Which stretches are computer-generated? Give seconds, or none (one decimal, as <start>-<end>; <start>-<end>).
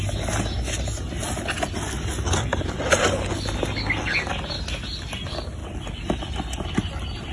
none